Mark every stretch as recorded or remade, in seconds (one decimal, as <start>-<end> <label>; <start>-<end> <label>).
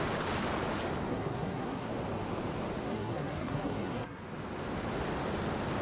0.0-1.1 recorded; 1.1-1.9 remade; 1.9-2.8 recorded; 2.8-4.2 remade; 4.2-5.8 recorded